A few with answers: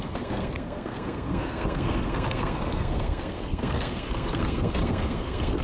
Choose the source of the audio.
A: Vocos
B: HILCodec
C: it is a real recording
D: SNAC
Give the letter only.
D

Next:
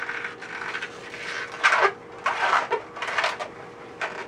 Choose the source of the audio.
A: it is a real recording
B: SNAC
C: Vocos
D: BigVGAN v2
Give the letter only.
A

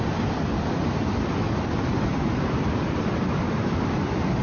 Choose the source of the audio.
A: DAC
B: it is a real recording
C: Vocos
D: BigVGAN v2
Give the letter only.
B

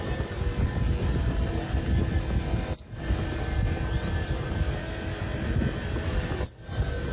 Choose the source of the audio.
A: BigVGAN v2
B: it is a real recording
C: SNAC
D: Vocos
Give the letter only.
B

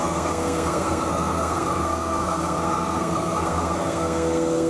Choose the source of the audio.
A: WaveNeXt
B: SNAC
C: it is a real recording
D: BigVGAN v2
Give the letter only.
B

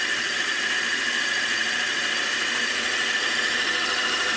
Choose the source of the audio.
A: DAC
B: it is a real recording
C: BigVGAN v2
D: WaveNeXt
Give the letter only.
C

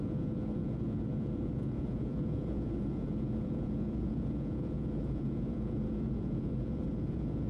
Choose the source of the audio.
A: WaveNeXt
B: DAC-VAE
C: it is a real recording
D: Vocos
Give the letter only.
D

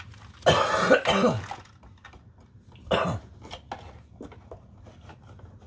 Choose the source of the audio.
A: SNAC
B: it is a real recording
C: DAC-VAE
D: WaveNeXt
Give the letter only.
B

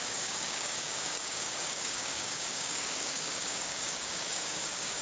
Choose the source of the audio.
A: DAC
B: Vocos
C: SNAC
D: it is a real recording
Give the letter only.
A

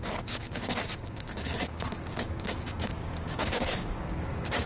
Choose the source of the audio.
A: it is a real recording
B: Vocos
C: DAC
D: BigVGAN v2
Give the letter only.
C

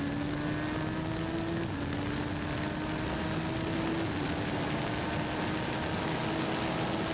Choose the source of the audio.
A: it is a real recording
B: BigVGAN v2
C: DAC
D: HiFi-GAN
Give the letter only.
A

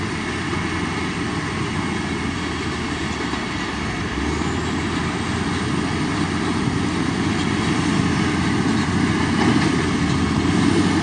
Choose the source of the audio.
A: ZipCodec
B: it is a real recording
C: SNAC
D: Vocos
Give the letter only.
B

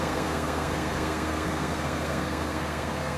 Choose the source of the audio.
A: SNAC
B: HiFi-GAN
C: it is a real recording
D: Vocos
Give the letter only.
A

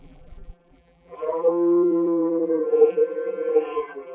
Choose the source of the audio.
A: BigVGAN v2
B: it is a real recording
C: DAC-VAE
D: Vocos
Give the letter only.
A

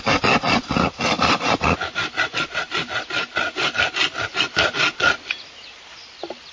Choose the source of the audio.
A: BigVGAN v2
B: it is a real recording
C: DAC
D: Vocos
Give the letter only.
B